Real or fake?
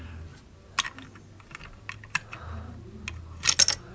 real